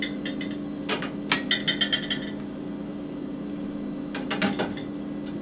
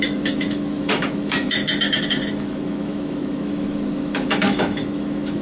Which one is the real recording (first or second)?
first